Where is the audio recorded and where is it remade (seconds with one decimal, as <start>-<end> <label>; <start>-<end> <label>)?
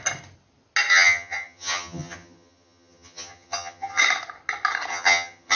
0.0-0.9 recorded; 0.9-4.0 remade; 4.0-4.9 recorded; 4.9-5.6 remade